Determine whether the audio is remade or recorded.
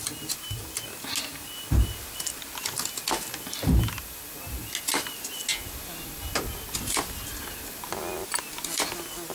recorded